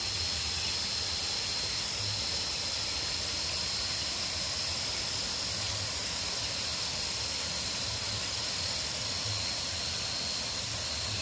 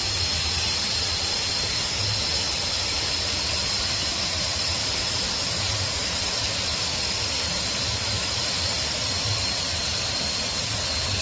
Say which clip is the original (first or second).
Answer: first